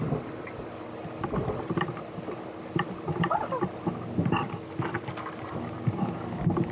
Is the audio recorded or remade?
recorded